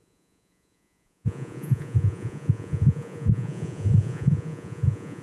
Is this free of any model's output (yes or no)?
no